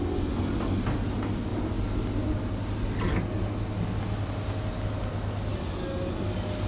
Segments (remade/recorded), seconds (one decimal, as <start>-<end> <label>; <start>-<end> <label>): 0.0-6.7 recorded